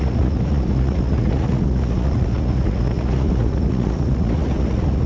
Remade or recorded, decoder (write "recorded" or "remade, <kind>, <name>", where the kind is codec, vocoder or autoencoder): remade, vocoder, Vocos